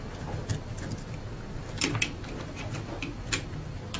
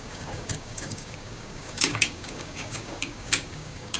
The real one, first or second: first